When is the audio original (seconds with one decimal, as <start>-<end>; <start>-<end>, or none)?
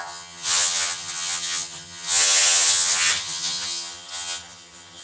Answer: none